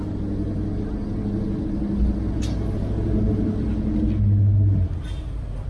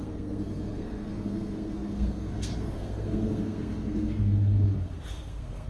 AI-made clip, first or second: second